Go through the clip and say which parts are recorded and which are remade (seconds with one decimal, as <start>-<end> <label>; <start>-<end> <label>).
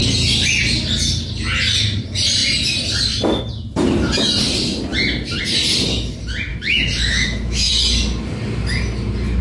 0.0-6.5 recorded; 6.5-7.7 remade; 7.7-9.4 recorded